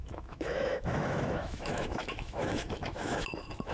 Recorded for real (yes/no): no